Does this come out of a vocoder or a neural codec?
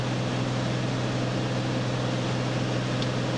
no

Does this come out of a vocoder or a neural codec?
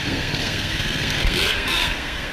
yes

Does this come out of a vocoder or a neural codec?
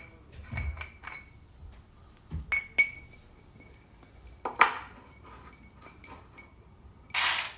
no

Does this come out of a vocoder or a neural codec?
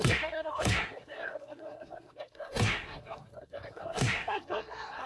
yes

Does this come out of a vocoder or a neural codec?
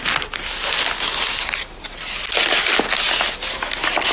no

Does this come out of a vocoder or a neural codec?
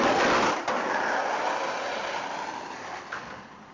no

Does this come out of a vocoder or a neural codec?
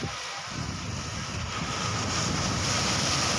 no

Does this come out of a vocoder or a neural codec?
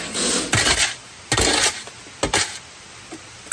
no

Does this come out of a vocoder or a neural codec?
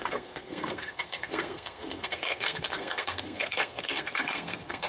yes